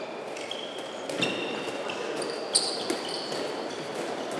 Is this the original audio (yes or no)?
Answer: yes